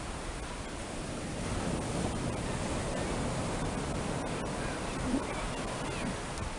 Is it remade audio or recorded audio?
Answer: recorded